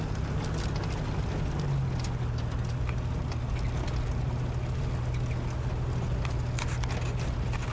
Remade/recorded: recorded